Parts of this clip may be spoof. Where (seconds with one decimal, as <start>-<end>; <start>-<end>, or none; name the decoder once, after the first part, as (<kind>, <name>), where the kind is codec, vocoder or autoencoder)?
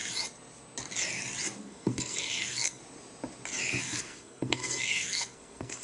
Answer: 1.6-2.8 (codec, SNAC); 3.8-5.8